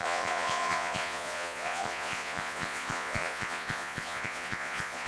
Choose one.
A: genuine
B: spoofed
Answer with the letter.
B